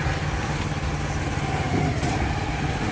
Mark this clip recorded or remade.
recorded